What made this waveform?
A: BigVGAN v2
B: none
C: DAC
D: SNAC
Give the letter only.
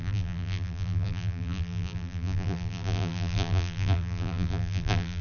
A